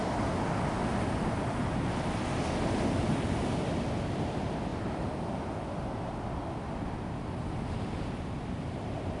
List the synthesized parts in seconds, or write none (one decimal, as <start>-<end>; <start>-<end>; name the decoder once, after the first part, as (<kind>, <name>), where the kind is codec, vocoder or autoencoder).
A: none